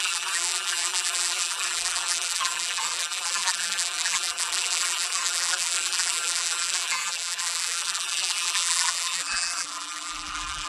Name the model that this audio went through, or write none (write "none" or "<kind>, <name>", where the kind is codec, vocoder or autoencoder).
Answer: vocoder, BigVGAN v2